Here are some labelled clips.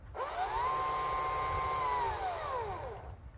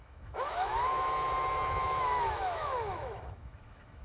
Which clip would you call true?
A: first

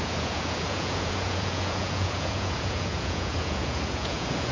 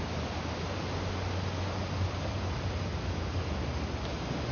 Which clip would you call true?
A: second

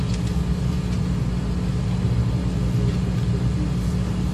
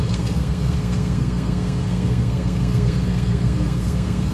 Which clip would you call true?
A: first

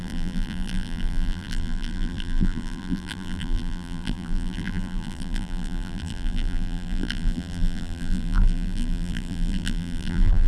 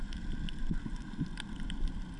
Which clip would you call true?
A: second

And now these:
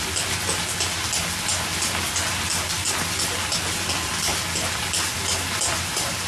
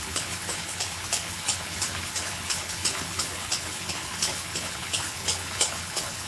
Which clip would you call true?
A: first